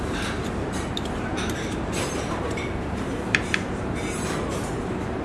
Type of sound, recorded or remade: remade